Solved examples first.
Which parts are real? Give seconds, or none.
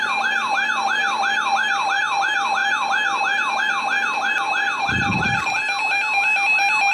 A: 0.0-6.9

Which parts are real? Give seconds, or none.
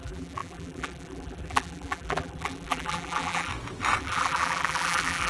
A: 3.5-4.0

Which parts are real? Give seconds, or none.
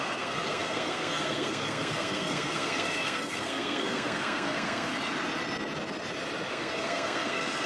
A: 4.9-6.5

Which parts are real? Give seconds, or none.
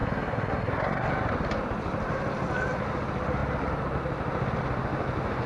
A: 1.1-5.5